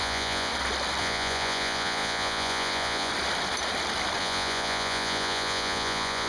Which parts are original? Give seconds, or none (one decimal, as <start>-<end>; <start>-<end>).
0.5-1.0; 3.1-4.2